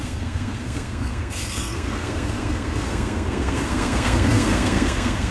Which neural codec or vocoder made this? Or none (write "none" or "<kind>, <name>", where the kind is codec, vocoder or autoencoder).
codec, SNAC